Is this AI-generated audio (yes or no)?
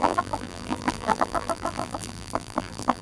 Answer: yes